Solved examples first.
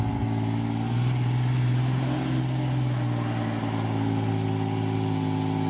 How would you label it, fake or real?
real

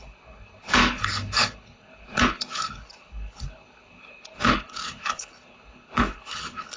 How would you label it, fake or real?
fake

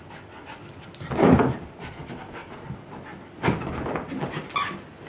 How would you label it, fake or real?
real